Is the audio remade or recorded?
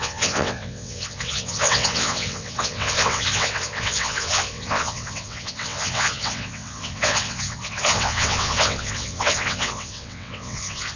remade